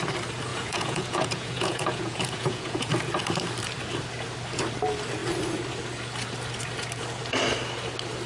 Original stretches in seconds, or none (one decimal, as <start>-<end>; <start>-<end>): 0.0-0.5; 2.9-8.3